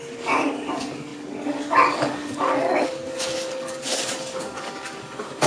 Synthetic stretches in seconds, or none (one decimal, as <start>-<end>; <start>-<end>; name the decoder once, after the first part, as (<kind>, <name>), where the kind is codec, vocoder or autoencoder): 0.0-5.5 (codec, DAC)